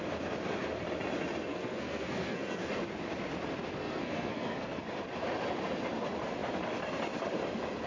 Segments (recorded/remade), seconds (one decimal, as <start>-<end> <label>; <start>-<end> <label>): 0.0-1.5 recorded; 1.5-2.7 remade; 2.7-3.8 recorded; 3.8-4.8 remade; 4.8-7.9 recorded